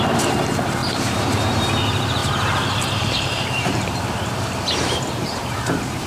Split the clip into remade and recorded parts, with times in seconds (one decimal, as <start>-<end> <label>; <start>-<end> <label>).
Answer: 0.0-0.8 recorded; 0.8-1.7 remade; 1.7-2.2 recorded; 2.2-6.1 remade